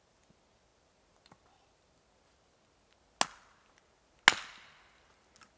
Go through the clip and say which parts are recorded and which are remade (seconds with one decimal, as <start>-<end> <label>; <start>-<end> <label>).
0.0-5.6 recorded

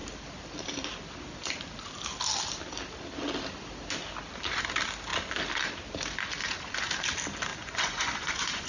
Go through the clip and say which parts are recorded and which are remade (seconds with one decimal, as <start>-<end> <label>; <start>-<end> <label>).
0.0-7.5 recorded; 7.5-8.7 remade

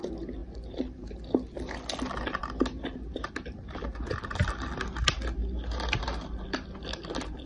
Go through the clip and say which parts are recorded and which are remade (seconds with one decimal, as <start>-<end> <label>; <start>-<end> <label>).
0.0-7.5 recorded

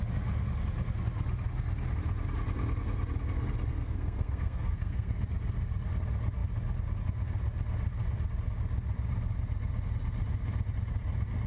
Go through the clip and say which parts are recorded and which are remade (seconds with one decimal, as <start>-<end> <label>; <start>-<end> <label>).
0.0-3.7 recorded; 3.7-5.1 remade; 5.1-11.5 recorded

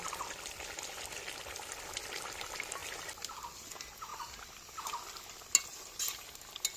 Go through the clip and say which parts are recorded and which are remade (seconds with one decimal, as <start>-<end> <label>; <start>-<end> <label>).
0.0-6.8 recorded